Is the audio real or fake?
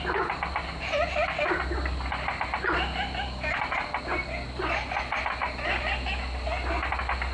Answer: real